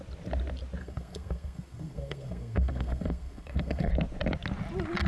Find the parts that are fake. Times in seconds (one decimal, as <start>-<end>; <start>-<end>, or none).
0.8-3.9